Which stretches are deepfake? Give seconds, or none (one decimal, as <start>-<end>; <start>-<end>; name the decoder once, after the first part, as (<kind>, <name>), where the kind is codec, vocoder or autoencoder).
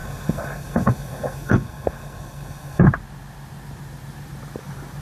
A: 0.0-2.8 (codec, SNAC)